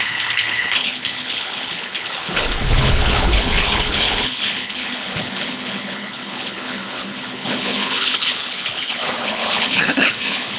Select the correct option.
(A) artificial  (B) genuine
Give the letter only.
A